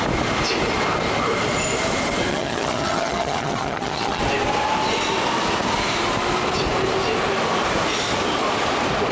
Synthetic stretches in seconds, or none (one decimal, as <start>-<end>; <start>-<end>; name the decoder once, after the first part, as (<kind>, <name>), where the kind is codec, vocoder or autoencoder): 2.3-4.2 (vocoder, HiFi-GAN)